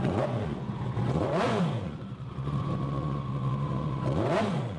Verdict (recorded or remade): remade